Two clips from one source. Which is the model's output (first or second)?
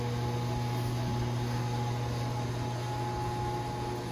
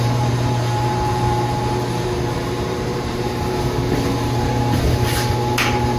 second